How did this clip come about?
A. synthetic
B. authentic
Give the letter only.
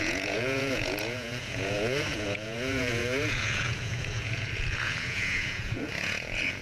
A